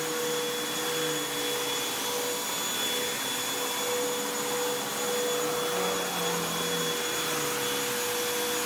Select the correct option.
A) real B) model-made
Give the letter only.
A